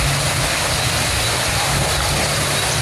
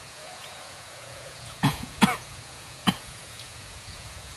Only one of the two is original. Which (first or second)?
first